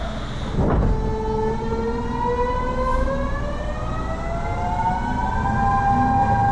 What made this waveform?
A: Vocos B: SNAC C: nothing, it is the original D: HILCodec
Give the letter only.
C